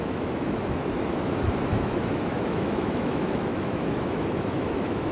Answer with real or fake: fake